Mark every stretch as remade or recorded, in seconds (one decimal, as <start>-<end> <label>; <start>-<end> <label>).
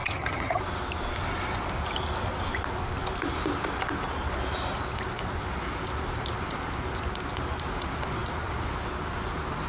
0.0-0.6 remade; 0.6-9.7 recorded